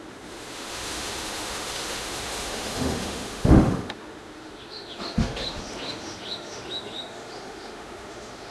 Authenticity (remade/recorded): remade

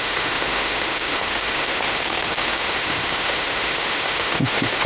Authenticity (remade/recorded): remade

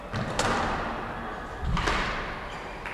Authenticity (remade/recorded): recorded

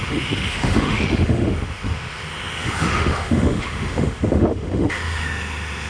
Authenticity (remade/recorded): remade